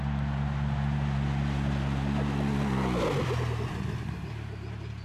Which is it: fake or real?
real